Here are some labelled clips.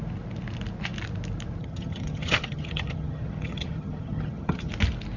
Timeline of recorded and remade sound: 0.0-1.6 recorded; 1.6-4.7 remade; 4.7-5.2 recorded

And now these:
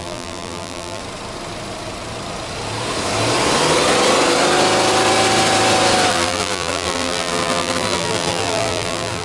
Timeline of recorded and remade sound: 0.0-1.0 remade; 1.0-6.1 recorded; 6.1-9.2 remade

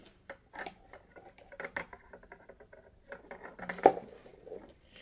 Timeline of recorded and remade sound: 0.0-5.0 recorded

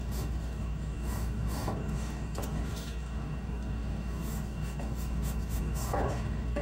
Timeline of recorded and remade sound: 0.0-6.6 remade

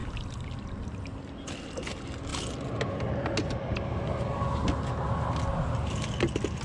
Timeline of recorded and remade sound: 0.0-6.6 recorded

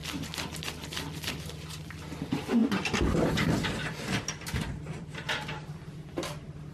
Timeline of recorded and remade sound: 0.0-1.3 recorded; 1.3-2.6 remade; 2.6-3.3 recorded; 3.3-6.7 remade

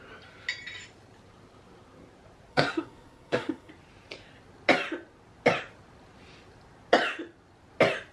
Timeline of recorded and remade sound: 0.0-2.5 recorded; 2.5-3.7 remade; 3.7-8.1 recorded